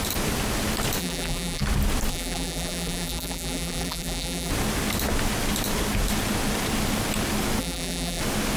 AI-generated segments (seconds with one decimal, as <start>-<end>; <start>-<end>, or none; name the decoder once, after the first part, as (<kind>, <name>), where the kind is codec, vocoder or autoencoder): 1.0-1.6 (vocoder, BigVGAN v2); 2.1-4.5; 7.6-8.2